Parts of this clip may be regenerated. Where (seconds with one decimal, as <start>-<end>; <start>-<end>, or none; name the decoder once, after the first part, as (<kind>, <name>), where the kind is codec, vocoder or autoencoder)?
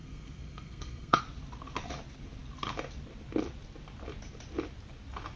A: 0.0-1.2 (codec, SNAC)